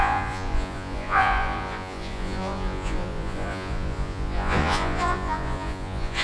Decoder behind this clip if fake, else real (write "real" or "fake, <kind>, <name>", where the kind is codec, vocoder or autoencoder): fake, vocoder, Vocos